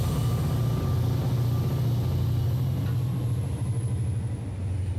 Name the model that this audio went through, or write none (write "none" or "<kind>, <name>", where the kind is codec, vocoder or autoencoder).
none